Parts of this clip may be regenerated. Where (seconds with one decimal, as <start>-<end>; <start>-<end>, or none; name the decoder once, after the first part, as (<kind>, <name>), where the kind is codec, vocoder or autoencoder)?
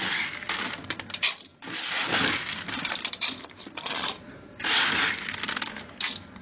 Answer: 1.5-4.2 (vocoder, BigVGAN v2)